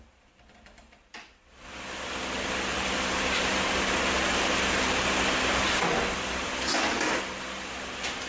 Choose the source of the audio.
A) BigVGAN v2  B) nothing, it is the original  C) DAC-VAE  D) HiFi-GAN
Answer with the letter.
B